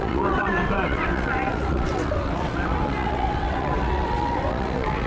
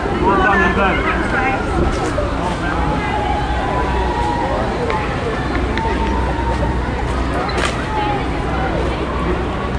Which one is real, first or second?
second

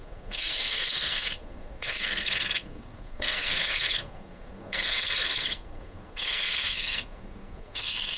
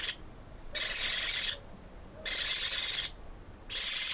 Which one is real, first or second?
second